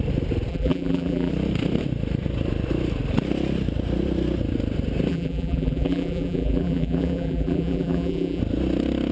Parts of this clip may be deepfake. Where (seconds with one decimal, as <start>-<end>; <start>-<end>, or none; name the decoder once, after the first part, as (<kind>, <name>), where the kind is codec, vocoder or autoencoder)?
0.5-1.3 (vocoder, BigVGAN v2); 5.1-8.4